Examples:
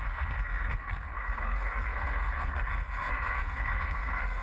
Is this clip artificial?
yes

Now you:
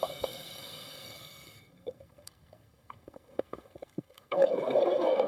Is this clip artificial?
yes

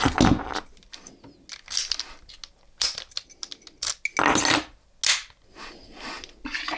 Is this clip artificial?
no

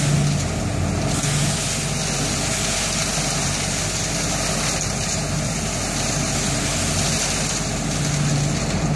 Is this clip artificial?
no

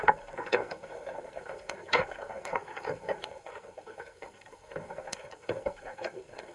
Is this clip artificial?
yes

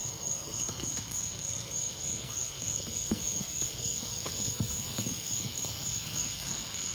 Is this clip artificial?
yes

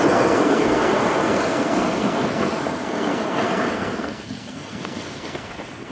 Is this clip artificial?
yes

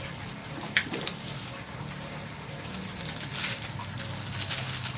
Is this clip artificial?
no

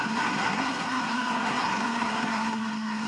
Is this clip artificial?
yes